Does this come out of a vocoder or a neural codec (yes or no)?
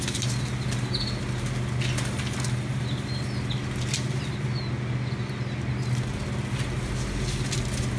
no